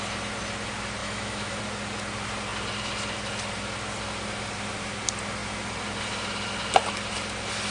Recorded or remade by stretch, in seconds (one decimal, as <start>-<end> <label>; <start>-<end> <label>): 0.0-1.0 recorded; 1.0-1.6 remade; 1.6-7.7 recorded

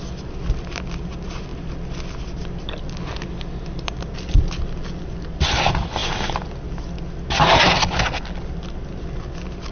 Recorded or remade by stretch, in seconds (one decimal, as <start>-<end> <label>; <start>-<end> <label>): 0.0-9.7 recorded

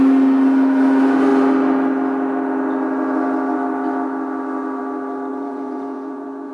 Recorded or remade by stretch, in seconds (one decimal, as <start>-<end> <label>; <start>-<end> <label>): 0.0-5.3 recorded; 5.3-6.5 remade

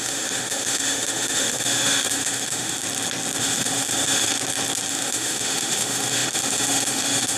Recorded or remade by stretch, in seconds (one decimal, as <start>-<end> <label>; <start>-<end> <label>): 0.0-2.8 remade; 2.8-3.4 recorded; 3.4-4.3 remade; 4.3-4.9 recorded; 4.9-7.4 remade

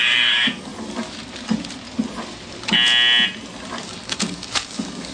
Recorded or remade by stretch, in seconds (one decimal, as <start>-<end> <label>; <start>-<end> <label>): 0.0-0.7 remade; 0.7-3.8 recorded; 3.8-5.1 remade